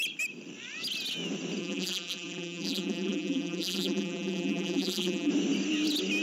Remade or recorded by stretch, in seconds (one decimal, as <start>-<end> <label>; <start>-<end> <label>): 0.0-1.6 recorded; 1.6-5.3 remade; 5.3-6.2 recorded